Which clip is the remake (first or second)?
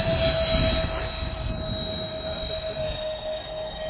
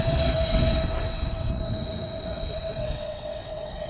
second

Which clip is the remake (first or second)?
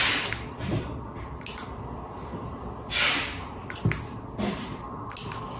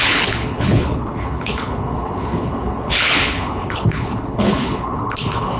second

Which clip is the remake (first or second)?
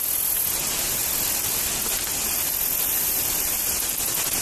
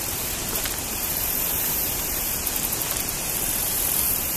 second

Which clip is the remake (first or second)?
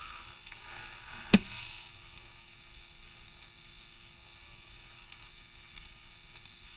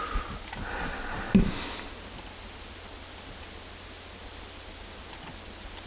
first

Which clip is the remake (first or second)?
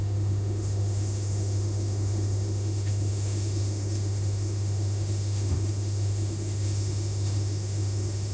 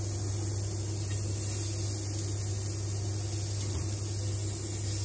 first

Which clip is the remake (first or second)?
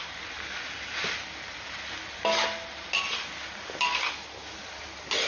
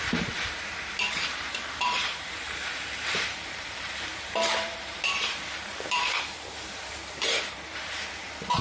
second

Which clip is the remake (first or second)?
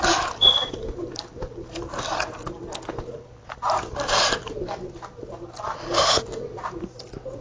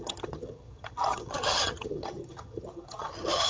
second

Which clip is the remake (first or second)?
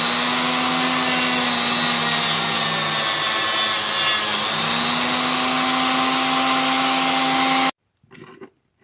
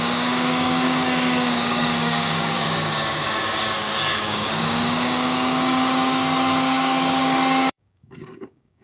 second